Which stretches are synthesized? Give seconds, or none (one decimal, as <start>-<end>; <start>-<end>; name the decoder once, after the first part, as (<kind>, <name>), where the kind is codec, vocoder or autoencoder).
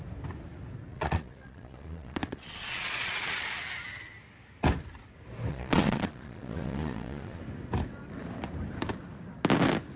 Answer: 0.9-3.6 (vocoder, Vocos); 5.5-7.4